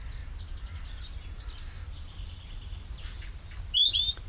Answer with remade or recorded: recorded